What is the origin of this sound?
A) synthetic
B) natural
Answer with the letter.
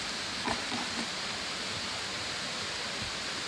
B